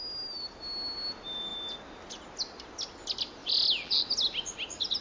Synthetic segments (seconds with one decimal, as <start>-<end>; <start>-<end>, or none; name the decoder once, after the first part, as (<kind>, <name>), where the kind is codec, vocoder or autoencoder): 3.4-4.0 (vocoder, BigVGAN v2)

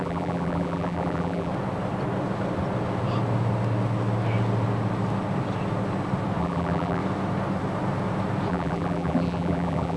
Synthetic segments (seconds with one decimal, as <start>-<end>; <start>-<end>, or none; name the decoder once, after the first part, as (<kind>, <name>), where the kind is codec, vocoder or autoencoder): 0.0-1.5 (vocoder, BigVGAN v2); 6.4-7.0; 8.5-10.0

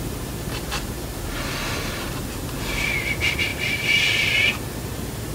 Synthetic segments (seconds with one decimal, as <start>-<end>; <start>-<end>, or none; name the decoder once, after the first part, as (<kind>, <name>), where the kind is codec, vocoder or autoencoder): none

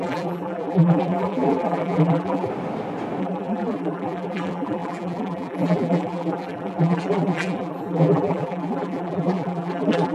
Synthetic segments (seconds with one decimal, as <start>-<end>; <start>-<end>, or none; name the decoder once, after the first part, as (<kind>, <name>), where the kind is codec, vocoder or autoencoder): 0.0-2.5 (vocoder, BigVGAN v2); 3.2-10.1

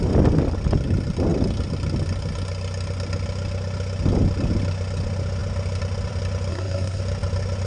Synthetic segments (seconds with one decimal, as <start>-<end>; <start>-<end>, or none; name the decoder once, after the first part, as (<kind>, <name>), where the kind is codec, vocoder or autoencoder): 6.5-7.0 (codec, SNAC)

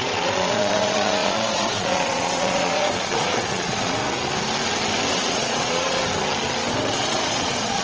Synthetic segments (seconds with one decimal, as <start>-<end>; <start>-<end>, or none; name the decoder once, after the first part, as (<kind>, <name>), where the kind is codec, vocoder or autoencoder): 0.0-4.0 (vocoder, Vocos); 5.1-6.0; 6.8-7.8

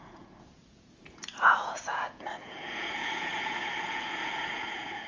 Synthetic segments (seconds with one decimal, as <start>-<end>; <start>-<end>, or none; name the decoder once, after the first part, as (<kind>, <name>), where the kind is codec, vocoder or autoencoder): 0.0-5.1 (vocoder, Vocos)

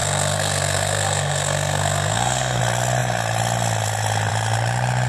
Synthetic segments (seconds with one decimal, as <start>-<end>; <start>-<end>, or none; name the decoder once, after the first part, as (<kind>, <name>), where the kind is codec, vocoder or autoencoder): 0.0-2.6 (codec, SNAC)